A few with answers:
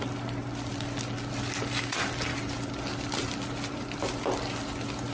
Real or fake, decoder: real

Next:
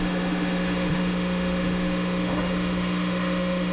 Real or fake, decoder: fake, autoencoder, DAC-VAE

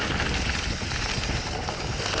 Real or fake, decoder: real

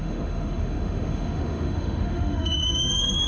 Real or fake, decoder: fake, autoencoder, DAC-VAE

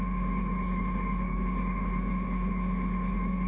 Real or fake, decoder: fake, autoencoder, DAC-VAE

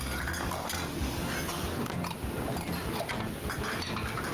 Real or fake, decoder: real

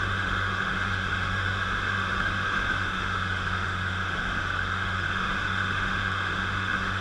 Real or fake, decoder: fake, autoencoder, DAC-VAE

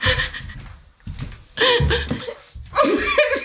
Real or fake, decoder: real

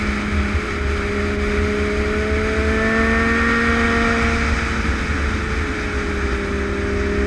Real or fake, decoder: real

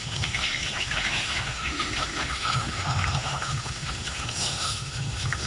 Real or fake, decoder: fake, autoencoder, DAC-VAE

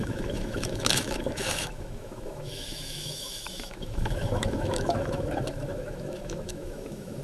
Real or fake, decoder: fake, autoencoder, DAC-VAE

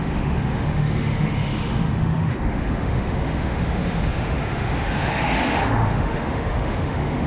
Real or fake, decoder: fake, autoencoder, DAC-VAE